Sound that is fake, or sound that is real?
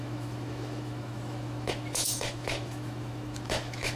fake